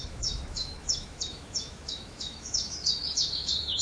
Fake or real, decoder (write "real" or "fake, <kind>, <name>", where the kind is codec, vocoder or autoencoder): fake, autoencoder, DAC-VAE